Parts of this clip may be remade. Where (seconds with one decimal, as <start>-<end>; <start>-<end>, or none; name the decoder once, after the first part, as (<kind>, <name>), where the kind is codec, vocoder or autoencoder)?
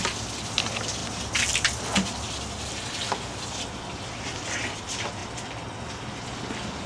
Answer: none